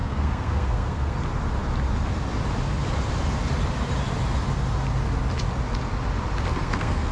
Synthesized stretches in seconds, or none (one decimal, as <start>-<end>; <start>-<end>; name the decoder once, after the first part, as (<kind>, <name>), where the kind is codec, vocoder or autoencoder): 0.0-1.2 (codec, SNAC); 6.6-7.1